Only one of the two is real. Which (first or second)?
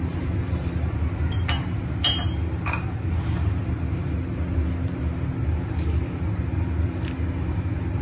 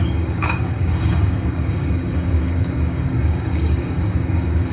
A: first